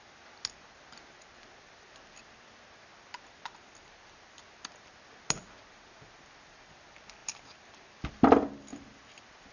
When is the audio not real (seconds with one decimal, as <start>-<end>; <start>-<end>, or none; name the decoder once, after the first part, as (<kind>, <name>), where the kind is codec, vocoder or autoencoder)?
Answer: none